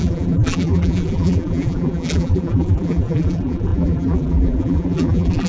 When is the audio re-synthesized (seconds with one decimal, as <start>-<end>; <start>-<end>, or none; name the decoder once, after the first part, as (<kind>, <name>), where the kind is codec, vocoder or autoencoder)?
0.0-5.5 (vocoder, BigVGAN v2)